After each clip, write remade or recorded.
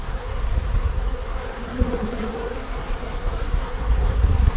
remade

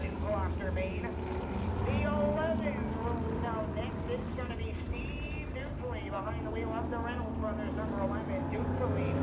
recorded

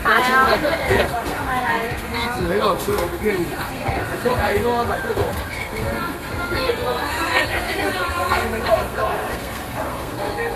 remade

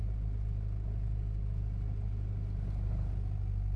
recorded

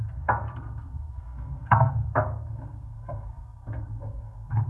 remade